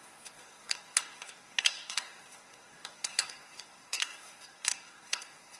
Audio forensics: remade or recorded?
remade